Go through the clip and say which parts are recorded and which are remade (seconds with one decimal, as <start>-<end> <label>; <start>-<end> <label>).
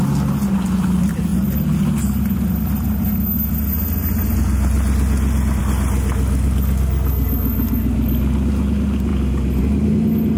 0.0-10.4 recorded